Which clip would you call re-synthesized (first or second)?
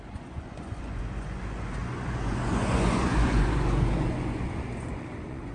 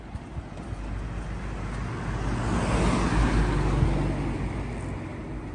first